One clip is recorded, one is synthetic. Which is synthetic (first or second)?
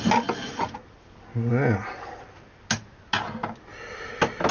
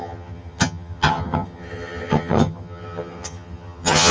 second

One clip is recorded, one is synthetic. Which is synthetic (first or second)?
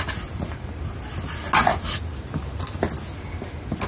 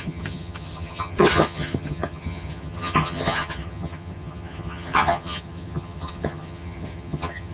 second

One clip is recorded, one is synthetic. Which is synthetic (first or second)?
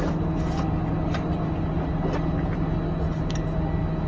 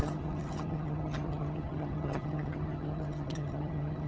second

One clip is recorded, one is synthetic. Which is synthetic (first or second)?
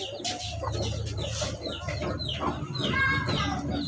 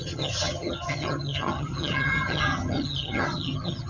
second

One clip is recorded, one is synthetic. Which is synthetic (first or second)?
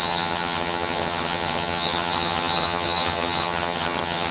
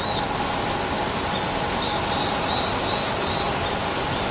first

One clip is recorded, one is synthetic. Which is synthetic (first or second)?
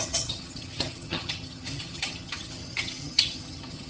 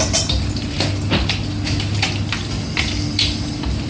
first